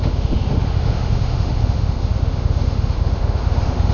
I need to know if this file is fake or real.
fake